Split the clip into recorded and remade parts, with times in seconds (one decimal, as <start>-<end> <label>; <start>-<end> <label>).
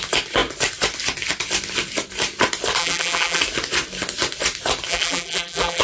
0.0-2.8 recorded; 2.8-3.4 remade; 3.4-4.9 recorded; 4.9-5.8 remade